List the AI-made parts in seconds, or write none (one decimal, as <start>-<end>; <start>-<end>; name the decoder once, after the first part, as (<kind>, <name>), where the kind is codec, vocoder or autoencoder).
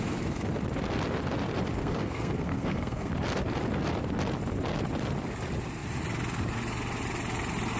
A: 1.8-3.1 (codec, SNAC)